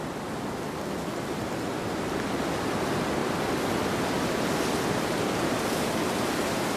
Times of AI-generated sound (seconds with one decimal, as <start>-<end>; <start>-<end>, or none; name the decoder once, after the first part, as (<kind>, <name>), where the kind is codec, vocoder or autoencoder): none